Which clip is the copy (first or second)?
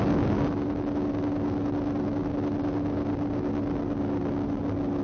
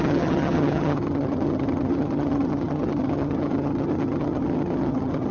second